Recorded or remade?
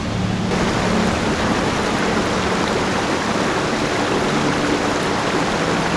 recorded